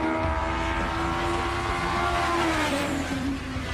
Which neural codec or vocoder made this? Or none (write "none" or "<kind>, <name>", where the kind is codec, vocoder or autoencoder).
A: vocoder, BigVGAN v2